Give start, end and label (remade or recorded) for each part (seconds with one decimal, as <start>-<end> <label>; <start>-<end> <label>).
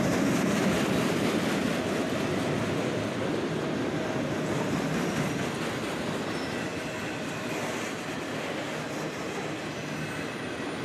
0.0-10.8 recorded